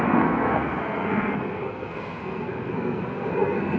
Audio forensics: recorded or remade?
remade